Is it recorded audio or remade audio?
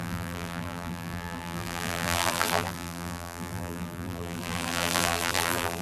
remade